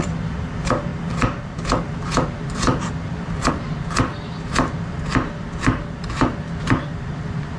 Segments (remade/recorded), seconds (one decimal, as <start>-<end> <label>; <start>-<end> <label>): 0.0-7.6 recorded